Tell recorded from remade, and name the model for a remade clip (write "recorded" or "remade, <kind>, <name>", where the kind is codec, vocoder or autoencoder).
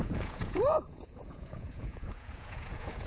remade, vocoder, Vocos